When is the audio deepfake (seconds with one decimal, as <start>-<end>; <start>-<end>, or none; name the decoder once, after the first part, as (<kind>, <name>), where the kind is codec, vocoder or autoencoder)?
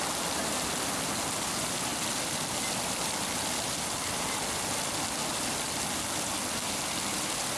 none